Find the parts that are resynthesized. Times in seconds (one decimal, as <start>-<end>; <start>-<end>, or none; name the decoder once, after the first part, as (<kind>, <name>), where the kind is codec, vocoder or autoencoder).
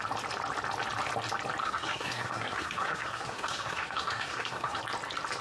1.6-4.8 (codec, SNAC)